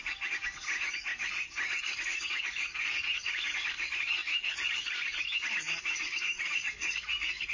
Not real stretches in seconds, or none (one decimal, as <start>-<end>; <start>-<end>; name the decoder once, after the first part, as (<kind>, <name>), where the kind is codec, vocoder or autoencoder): 0.0-7.5 (codec, DAC)